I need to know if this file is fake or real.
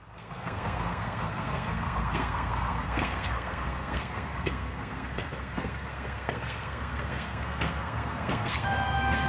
fake